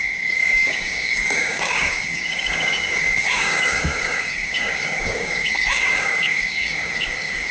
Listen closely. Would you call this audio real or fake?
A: fake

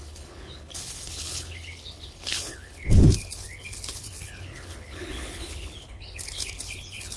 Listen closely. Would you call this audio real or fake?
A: fake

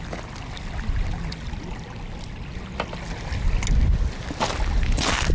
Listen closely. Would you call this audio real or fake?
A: real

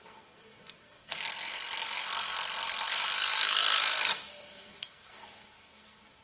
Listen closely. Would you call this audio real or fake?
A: fake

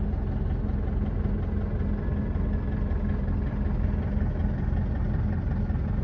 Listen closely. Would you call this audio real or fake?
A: real